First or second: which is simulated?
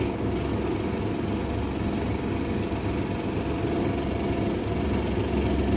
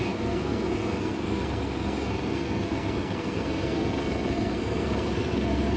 second